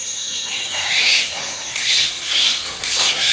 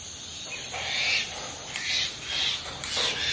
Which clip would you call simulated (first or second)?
first